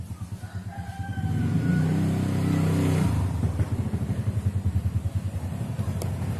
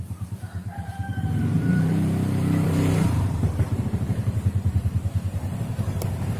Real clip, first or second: first